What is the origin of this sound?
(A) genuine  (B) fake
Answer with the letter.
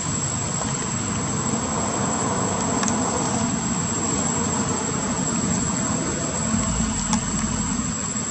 A